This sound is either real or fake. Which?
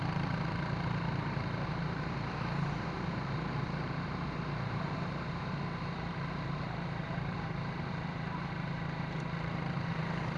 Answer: fake